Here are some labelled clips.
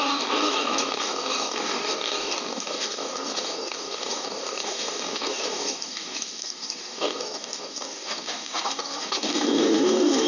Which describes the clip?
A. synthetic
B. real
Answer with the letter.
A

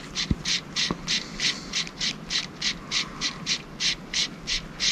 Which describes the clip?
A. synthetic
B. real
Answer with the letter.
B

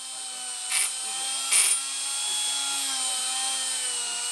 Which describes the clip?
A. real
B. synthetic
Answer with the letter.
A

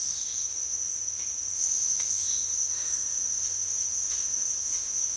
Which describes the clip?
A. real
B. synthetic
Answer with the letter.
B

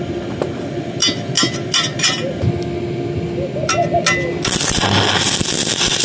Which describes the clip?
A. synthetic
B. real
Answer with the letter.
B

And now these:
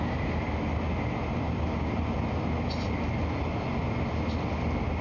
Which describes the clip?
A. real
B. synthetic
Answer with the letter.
A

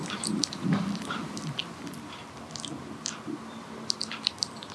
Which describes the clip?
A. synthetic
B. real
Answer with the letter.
B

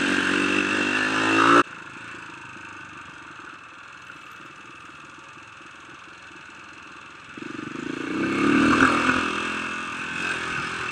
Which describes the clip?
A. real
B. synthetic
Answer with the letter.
A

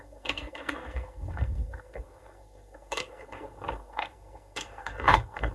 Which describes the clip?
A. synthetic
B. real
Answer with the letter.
A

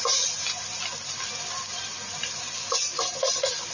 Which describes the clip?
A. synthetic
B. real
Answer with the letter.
B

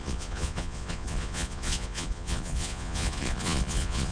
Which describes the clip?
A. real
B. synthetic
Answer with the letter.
B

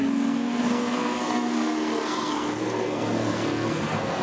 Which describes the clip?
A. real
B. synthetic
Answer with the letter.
B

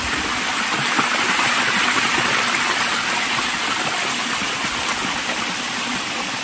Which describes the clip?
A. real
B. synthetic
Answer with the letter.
A